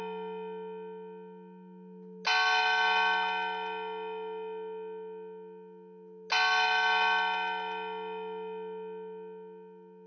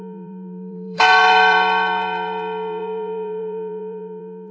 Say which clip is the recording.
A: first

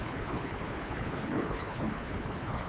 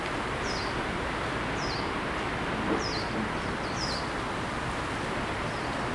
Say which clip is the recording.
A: second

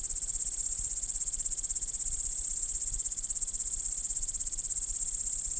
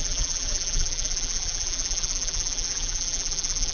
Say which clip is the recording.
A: first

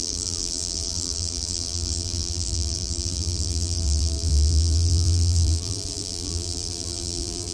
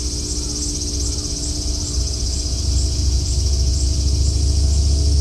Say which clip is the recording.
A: second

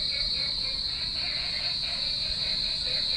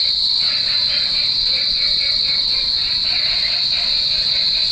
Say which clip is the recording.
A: first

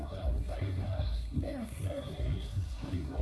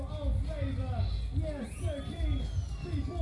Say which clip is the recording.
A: second